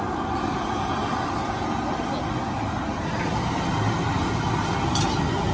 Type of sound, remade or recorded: recorded